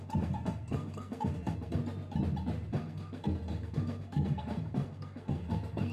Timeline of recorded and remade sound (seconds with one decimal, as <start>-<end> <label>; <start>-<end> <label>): 0.0-1.8 remade; 1.8-2.7 recorded; 2.7-5.9 remade